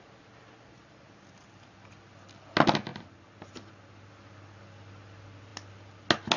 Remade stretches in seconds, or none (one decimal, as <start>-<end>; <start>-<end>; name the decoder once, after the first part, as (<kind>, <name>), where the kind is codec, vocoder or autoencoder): none